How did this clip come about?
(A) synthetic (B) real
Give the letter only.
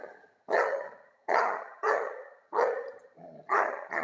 A